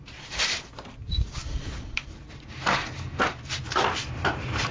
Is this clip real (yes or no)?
no